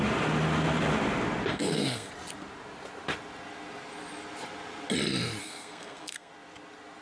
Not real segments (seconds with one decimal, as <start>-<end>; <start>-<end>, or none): 1.5-2.1; 5.4-6.3